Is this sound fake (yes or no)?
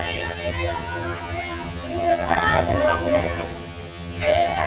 yes